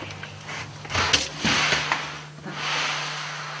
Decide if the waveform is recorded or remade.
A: recorded